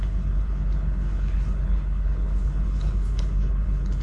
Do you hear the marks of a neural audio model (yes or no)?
yes